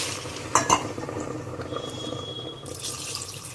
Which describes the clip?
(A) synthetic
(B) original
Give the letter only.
A